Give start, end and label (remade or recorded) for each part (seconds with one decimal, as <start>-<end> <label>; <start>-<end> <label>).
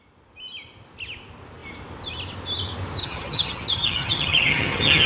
0.0-3.0 recorded; 3.0-5.1 remade